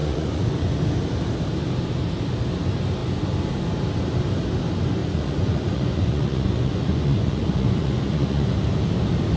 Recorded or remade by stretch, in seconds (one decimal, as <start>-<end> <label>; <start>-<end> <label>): 0.0-0.8 remade; 0.8-5.0 recorded; 5.0-8.5 remade; 8.5-9.4 recorded